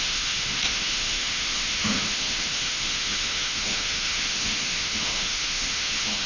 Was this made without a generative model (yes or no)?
no